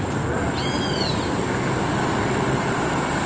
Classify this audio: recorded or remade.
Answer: recorded